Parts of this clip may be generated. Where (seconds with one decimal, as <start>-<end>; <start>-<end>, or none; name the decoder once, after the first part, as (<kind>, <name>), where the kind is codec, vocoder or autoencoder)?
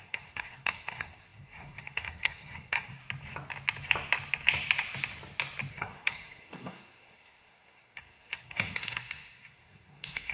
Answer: 0.0-3.0 (codec, SNAC); 5.7-10.3